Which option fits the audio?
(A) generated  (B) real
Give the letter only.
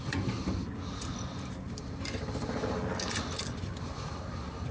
B